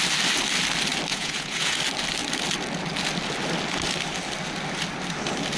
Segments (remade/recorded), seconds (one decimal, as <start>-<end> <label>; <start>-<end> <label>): 0.0-1.1 recorded; 1.1-1.8 remade; 1.8-5.6 recorded